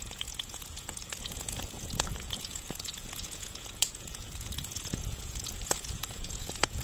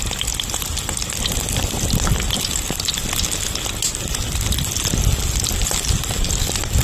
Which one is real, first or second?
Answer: second